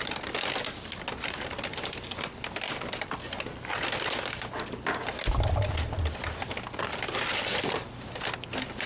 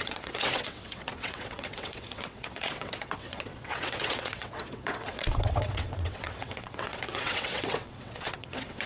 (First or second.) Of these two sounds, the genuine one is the first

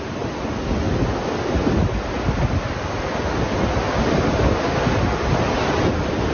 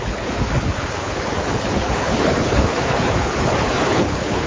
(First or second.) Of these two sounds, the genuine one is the first